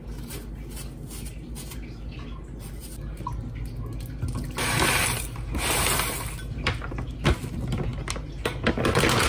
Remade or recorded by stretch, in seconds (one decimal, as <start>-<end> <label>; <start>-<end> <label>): 0.0-9.3 recorded